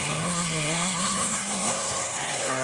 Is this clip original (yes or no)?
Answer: no